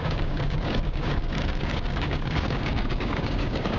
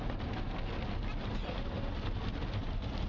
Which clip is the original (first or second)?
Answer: second